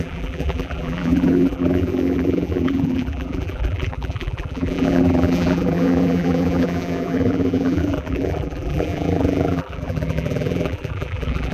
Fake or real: fake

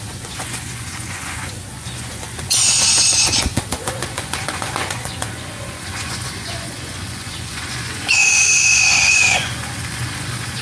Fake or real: fake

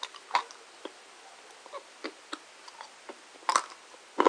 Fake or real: real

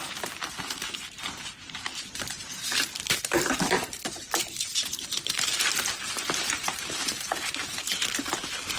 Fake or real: fake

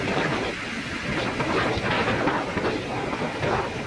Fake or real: real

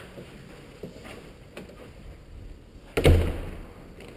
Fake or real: real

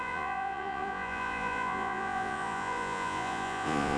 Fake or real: fake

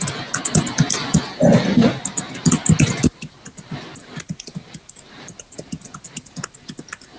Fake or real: real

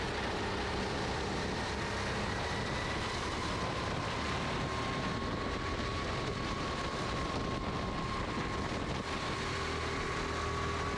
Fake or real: real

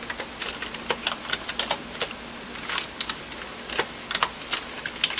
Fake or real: real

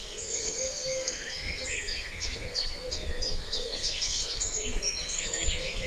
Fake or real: fake